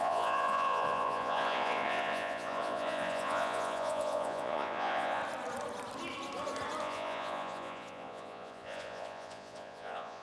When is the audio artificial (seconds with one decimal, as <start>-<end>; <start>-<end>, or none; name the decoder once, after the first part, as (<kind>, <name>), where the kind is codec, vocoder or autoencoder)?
0.0-5.2 (vocoder, Vocos); 6.8-10.2